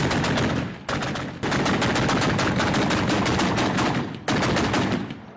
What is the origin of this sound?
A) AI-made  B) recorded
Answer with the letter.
B